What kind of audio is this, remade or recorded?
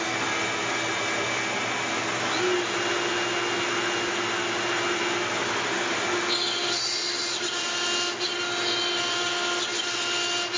recorded